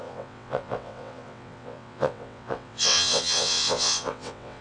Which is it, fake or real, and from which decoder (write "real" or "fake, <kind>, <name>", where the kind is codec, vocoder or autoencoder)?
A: fake, vocoder, WaveNeXt